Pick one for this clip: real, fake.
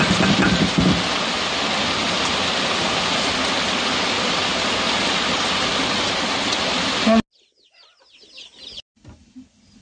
real